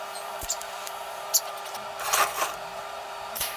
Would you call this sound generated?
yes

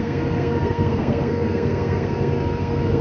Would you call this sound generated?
yes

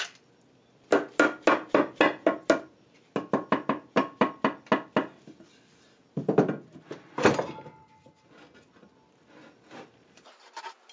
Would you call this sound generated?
no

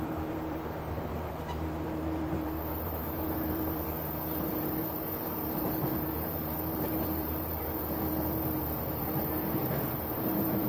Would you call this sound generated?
yes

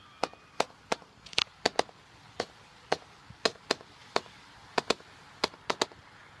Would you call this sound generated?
no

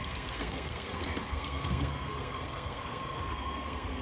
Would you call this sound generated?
yes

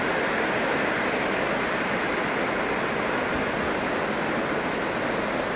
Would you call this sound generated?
no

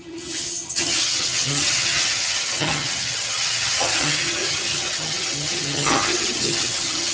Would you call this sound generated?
yes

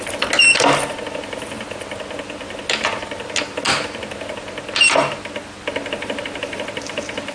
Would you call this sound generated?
no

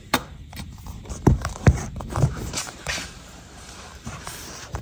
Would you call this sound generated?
yes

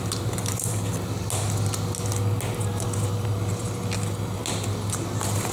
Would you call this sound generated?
no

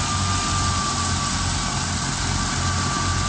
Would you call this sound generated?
no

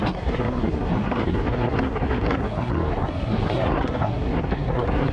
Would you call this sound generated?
yes